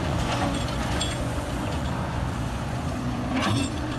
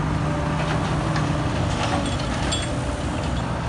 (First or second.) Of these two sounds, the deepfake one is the first